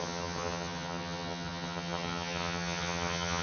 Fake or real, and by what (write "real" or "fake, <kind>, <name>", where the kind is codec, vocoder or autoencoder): fake, vocoder, HiFi-GAN